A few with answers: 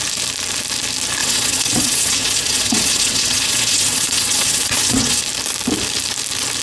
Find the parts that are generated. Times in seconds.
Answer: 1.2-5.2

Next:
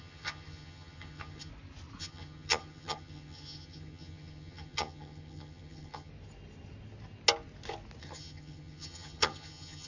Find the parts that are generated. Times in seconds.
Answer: 0.0-1.5; 2.0-6.1; 8.0-9.9

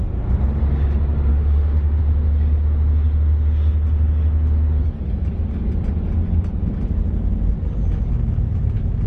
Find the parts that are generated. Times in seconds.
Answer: 1.3-2.0

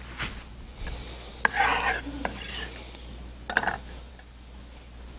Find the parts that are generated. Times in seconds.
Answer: none

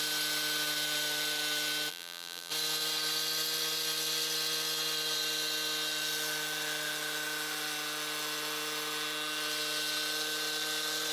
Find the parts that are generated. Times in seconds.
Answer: 1.9-2.5